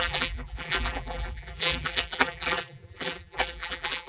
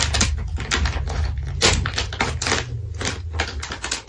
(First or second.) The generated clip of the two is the first